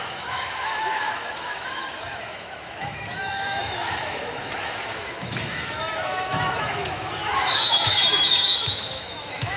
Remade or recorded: remade